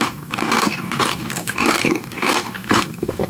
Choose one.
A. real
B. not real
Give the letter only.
B